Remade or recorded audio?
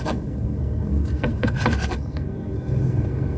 remade